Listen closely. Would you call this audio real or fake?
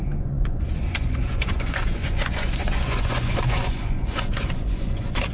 fake